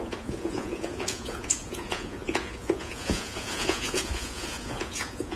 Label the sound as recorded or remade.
remade